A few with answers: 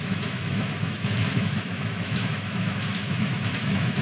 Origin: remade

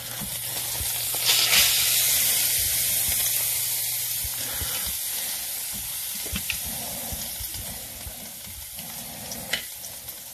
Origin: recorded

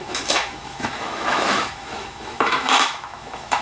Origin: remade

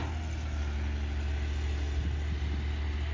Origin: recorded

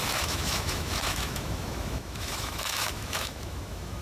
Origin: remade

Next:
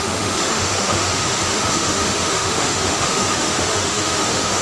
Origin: remade